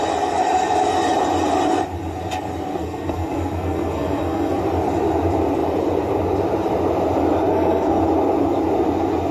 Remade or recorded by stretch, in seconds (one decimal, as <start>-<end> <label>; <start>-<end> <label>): 0.0-2.7 recorded; 2.7-4.6 remade; 4.6-7.5 recorded; 7.5-8.0 remade; 8.0-9.3 recorded